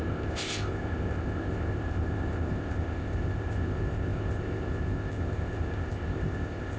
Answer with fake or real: fake